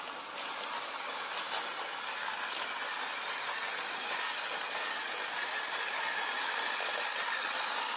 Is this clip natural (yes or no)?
yes